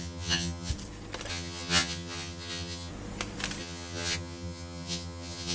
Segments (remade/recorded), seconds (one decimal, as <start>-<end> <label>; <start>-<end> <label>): 0.0-0.7 remade; 0.7-1.3 recorded; 1.3-2.9 remade; 2.9-3.6 recorded; 3.6-5.5 remade